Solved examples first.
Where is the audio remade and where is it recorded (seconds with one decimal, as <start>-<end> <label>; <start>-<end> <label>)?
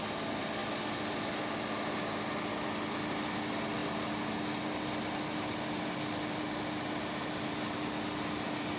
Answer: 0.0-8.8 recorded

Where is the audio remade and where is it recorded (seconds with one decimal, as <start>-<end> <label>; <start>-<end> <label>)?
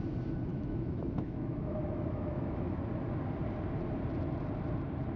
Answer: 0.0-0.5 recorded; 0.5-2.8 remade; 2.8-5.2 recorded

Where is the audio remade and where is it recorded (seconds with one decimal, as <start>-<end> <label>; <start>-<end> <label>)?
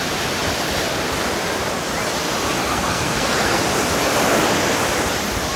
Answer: 0.0-2.6 recorded; 2.6-3.6 remade; 3.6-5.6 recorded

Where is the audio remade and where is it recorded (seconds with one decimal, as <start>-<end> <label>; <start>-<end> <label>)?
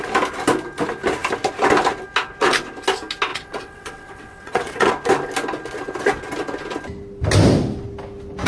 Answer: 0.0-3.3 recorded; 3.3-4.9 remade; 4.9-8.5 recorded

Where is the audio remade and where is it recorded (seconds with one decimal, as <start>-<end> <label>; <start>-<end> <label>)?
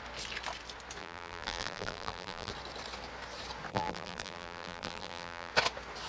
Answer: 0.0-1.0 recorded; 1.0-2.5 remade; 2.5-3.7 recorded; 3.7-5.5 remade; 5.5-6.1 recorded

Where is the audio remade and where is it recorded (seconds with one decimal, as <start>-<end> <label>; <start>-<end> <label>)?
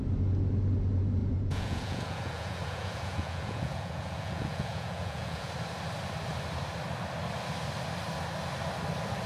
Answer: 0.0-1.2 recorded; 1.2-5.5 remade; 5.5-9.3 recorded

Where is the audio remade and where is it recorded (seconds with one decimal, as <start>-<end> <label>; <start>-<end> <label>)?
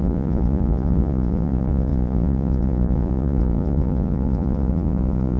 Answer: 0.0-5.4 remade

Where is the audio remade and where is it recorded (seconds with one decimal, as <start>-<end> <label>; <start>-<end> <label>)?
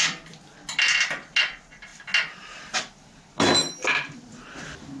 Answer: 0.0-5.0 recorded